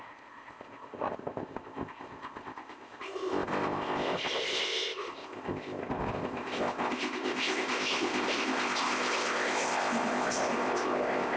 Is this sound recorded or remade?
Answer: remade